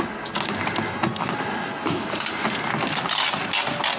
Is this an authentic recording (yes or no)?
yes